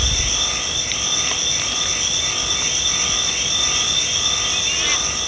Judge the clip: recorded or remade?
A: recorded